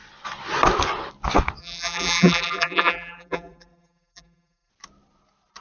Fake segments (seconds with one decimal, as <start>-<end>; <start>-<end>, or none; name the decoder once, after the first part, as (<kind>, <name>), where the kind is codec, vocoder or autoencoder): 1.6-4.7 (vocoder, BigVGAN v2)